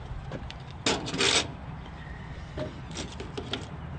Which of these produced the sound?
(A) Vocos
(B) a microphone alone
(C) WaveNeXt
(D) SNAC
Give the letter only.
B